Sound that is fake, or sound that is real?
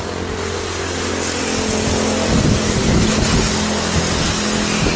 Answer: real